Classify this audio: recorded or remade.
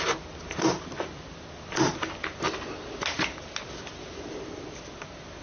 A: recorded